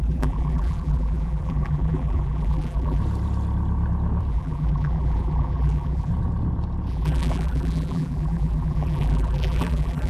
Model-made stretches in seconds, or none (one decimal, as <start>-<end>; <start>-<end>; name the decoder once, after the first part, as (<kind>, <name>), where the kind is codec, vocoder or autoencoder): 0.0-3.0 (vocoder, BigVGAN v2); 4.3-6.1; 6.9-10.1